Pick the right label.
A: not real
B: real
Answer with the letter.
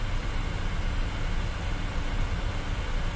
B